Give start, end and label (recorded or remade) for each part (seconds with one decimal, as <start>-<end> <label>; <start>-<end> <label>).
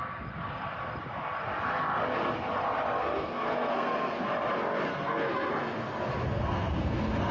0.0-3.0 recorded; 3.0-4.2 remade; 4.2-4.9 recorded; 4.9-5.5 remade; 5.5-6.3 recorded; 6.3-7.3 remade